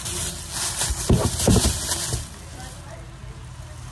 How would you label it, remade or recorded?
recorded